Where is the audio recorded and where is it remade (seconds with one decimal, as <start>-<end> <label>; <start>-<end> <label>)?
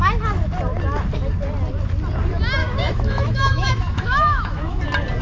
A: 0.0-2.6 recorded; 2.6-4.8 remade; 4.8-5.2 recorded